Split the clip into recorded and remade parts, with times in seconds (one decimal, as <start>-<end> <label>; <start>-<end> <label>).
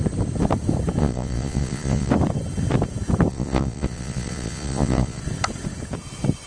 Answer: 0.0-1.0 recorded; 1.0-2.1 remade; 2.1-3.3 recorded; 3.3-5.2 remade; 5.2-6.5 recorded